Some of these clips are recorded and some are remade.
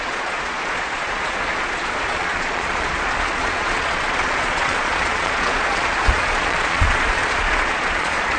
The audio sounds remade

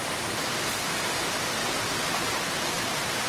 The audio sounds remade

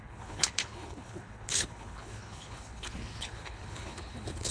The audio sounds remade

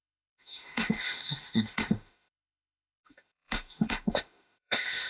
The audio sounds remade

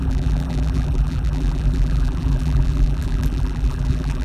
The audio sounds remade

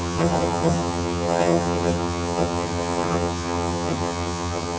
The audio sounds remade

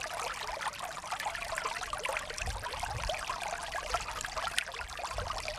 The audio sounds recorded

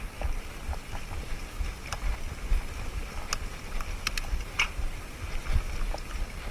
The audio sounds recorded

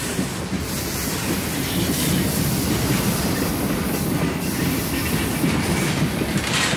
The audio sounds recorded